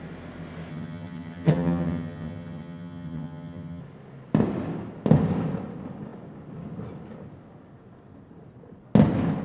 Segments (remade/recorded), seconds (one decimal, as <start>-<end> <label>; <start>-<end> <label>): 0.0-0.7 recorded; 0.7-3.8 remade; 3.8-9.4 recorded